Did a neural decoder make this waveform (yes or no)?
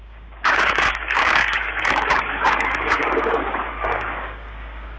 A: yes